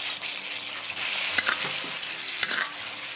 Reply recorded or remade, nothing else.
recorded